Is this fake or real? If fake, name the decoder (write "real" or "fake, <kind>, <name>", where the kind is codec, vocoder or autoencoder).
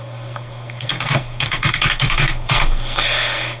fake, codec, SNAC